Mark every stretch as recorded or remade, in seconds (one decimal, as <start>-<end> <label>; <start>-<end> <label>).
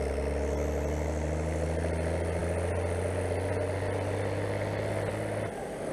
0.0-5.9 recorded